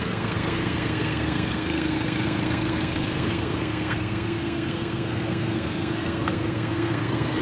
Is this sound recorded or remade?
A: remade